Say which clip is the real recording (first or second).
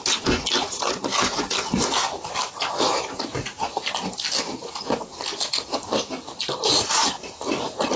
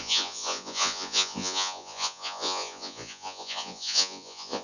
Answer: first